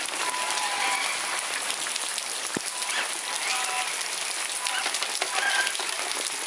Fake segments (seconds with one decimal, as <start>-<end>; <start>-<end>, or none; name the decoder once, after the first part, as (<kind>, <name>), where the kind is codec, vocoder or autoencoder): none